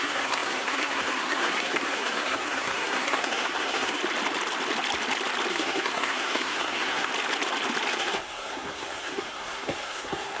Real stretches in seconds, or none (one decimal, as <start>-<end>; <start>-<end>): 4.0-5.5; 7.1-7.9